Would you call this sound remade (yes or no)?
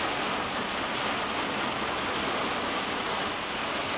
no